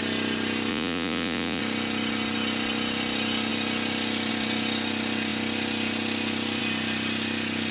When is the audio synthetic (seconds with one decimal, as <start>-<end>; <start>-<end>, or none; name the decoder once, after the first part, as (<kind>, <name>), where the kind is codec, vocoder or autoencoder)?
0.7-1.6 (vocoder, Vocos)